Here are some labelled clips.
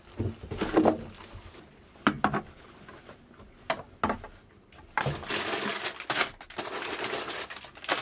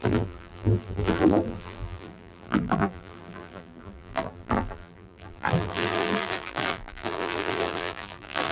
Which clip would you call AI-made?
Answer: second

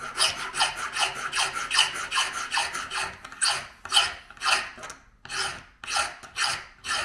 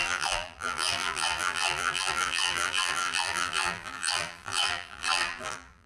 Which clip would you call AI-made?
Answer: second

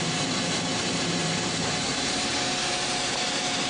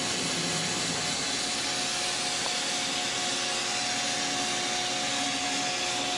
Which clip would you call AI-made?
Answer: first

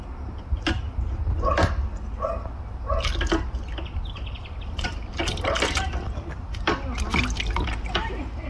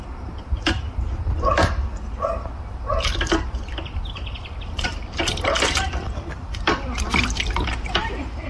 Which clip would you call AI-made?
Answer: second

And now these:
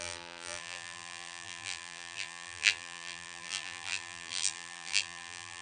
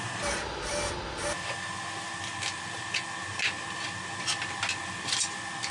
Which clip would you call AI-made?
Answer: first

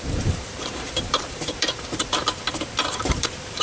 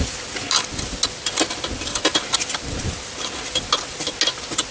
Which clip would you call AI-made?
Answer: first